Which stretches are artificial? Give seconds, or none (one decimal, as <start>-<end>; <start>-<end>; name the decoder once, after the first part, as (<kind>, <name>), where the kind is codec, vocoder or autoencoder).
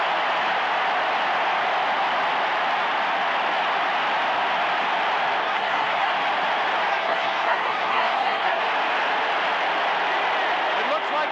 5.4-6.1 (codec, SNAC); 6.9-8.6